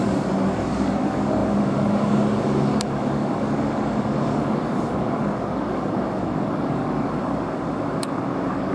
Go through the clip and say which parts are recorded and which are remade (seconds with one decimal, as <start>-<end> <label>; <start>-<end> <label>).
0.0-8.7 remade